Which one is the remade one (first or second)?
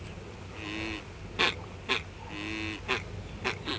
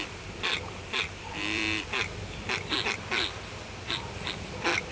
second